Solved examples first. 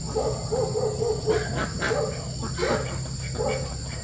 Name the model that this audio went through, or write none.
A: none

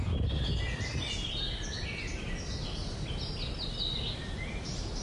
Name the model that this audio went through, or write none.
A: none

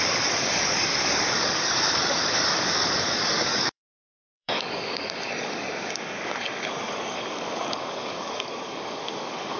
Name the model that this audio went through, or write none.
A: codec, DAC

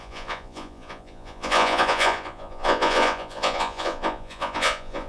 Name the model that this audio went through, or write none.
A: vocoder, Vocos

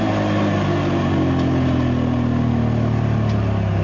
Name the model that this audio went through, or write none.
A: none